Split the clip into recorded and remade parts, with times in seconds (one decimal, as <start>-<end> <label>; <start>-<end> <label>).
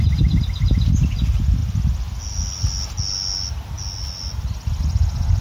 0.0-5.4 recorded